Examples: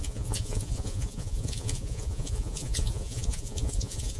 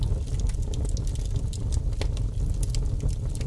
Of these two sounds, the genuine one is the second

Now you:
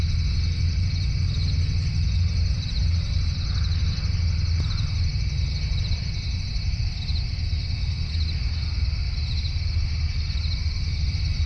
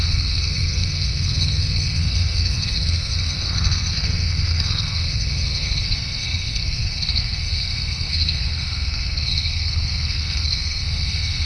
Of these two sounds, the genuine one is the first